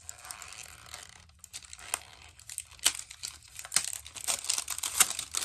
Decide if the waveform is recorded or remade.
recorded